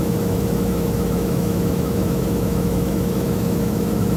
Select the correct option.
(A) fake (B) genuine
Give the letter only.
A